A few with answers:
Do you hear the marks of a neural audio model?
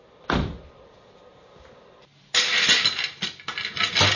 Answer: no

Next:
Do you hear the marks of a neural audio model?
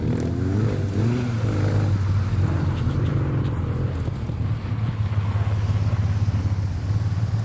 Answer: no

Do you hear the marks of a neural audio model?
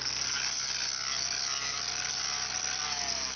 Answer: no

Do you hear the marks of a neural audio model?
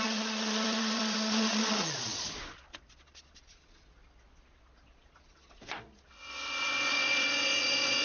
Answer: yes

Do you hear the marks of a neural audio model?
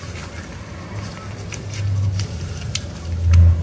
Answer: no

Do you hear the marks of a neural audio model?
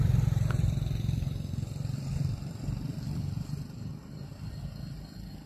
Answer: yes